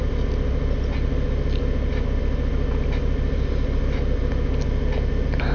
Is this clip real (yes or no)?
yes